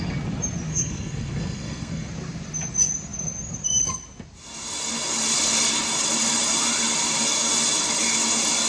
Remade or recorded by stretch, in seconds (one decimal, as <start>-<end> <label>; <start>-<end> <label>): 0.0-0.7 recorded; 0.7-2.1 remade; 2.1-8.7 recorded